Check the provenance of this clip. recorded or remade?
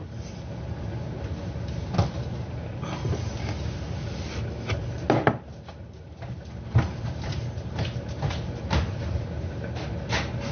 recorded